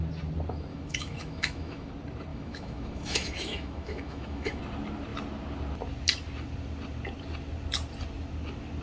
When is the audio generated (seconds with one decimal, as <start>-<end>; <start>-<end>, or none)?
0.7-1.9; 2.3-4.6